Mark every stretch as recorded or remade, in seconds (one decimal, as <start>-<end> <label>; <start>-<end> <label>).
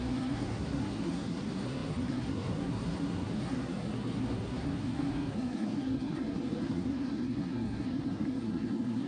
0.0-9.1 remade